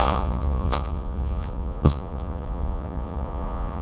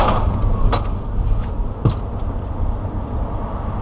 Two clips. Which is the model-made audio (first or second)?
first